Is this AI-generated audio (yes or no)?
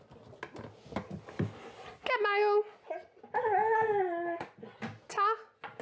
no